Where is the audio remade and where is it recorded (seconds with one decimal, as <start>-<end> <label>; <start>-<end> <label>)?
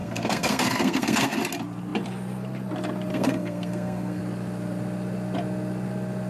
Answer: 0.0-1.4 remade; 1.4-3.1 recorded; 3.1-4.2 remade; 4.2-6.3 recorded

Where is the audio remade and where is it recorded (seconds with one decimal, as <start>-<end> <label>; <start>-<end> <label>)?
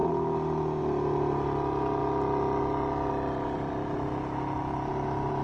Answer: 0.0-5.4 recorded